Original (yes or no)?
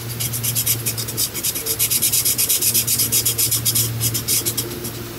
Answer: yes